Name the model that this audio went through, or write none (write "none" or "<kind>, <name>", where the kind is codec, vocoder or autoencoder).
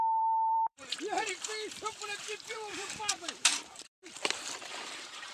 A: vocoder, BigVGAN v2